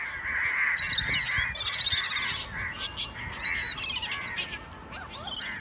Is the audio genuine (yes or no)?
yes